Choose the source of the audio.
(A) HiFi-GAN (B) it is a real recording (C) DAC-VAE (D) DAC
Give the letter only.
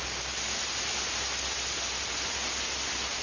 B